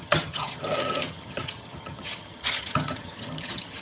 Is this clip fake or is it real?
fake